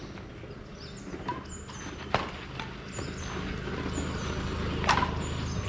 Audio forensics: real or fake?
real